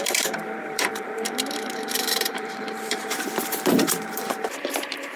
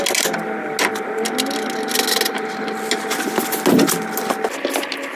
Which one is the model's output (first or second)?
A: first